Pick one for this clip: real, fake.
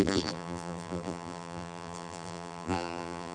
fake